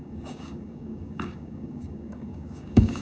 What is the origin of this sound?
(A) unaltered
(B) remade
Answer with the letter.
B